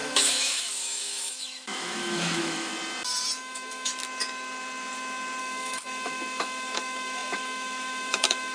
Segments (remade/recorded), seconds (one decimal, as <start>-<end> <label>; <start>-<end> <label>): 0.0-2.7 remade; 2.7-3.4 recorded; 3.4-3.9 remade; 3.9-5.4 recorded; 5.4-8.5 remade